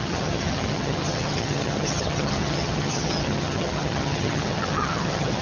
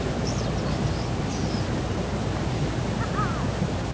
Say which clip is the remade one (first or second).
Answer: first